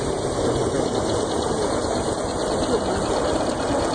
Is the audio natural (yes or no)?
yes